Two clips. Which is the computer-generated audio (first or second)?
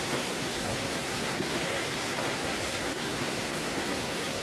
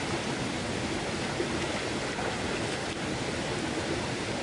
first